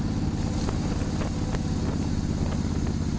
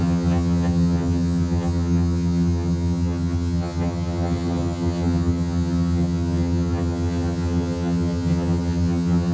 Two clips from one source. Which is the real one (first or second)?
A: first